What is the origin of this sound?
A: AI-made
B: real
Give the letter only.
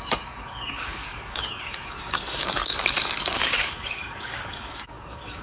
A